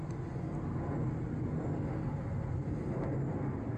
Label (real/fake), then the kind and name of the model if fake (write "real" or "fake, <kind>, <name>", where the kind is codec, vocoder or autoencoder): real